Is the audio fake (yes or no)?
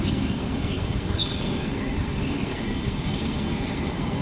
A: yes